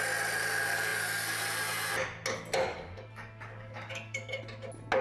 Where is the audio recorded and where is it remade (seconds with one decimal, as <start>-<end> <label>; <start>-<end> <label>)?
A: 0.0-2.7 recorded; 2.7-4.4 remade; 4.4-5.0 recorded